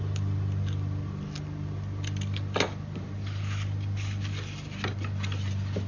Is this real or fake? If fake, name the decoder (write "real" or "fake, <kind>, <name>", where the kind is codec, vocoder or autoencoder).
real